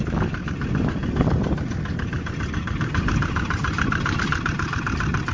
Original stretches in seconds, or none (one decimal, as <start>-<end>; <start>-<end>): 0.0-1.0; 4.2-5.3